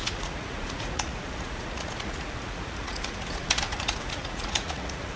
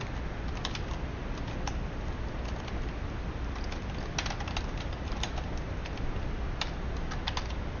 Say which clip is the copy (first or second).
first